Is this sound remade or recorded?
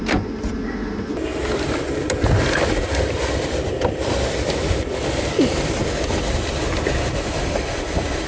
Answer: recorded